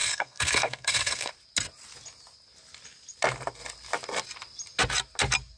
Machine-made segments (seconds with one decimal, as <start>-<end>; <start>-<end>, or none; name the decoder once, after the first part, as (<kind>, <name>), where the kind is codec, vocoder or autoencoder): 0.0-1.3 (codec, SNAC)